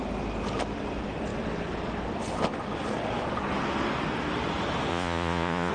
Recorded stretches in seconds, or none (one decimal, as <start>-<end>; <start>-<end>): 0.0-4.9